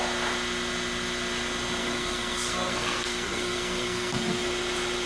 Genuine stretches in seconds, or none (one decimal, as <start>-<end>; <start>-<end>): 0.0-1.8; 4.5-5.1